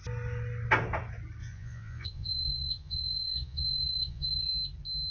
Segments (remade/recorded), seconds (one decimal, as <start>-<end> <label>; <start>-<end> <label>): 0.0-1.4 recorded; 1.4-4.5 remade; 4.5-5.1 recorded